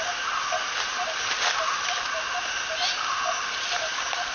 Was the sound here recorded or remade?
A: recorded